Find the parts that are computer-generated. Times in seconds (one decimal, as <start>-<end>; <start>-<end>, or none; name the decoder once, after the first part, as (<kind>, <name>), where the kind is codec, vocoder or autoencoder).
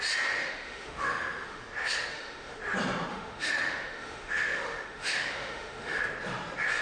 0.4-1.6 (autoencoder, DAC-VAE); 2.1-2.6; 3.1-6.0